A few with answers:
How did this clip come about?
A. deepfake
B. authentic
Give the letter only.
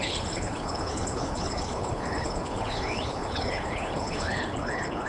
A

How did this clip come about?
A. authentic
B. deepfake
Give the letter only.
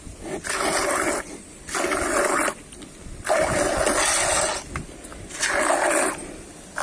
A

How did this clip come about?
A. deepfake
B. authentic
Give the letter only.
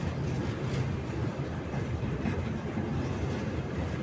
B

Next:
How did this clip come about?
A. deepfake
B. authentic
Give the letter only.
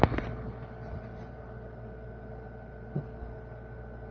B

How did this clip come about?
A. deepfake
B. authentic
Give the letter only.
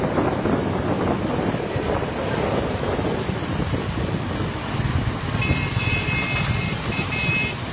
B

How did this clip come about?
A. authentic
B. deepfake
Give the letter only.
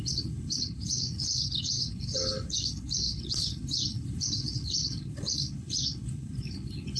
B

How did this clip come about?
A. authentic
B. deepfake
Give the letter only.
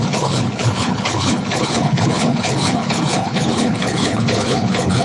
B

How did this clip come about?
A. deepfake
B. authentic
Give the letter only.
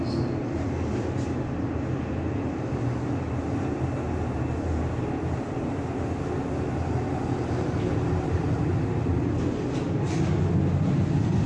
B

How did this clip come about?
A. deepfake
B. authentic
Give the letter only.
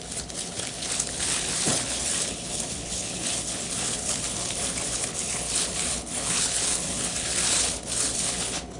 A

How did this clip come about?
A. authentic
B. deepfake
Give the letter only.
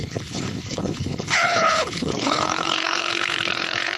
B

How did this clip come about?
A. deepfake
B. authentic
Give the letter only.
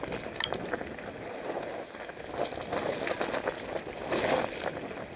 B